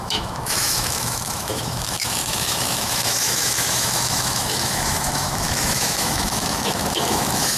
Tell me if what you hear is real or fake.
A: fake